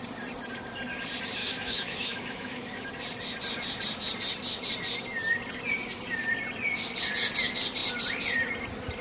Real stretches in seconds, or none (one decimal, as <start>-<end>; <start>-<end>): 0.0-1.4; 2.9-9.0